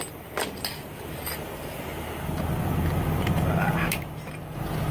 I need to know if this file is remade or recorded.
recorded